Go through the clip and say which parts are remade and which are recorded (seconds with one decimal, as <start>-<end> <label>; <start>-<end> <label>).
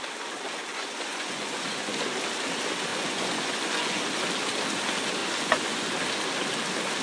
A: 0.0-0.7 recorded; 0.7-2.1 remade; 2.1-2.9 recorded; 2.9-4.0 remade; 4.0-5.2 recorded; 5.2-5.9 remade; 5.9-7.0 recorded